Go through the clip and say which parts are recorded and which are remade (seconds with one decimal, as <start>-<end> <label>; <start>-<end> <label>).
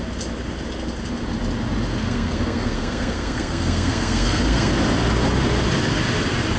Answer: 0.0-2.0 recorded; 2.0-4.7 remade; 4.7-6.6 recorded